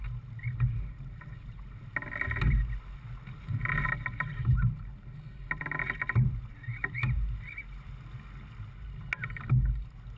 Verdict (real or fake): real